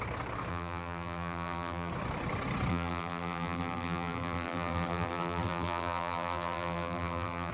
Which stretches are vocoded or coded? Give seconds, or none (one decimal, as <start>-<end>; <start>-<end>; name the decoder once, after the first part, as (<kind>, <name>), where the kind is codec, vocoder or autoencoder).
0.5-1.9 (vocoder, BigVGAN v2); 2.7-7.5